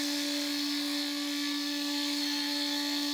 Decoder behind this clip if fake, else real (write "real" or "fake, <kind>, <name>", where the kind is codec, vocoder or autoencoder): fake, codec, SNAC